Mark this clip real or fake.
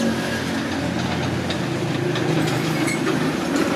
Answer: real